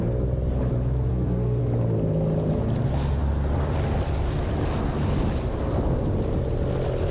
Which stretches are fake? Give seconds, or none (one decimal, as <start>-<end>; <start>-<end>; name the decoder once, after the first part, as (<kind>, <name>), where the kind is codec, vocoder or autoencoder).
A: 1.1-1.6 (codec, SNAC)